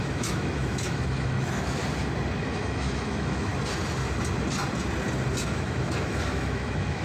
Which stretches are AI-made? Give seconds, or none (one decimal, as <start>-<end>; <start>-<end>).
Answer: 0.0-1.8; 2.4-3.5; 5.4-7.0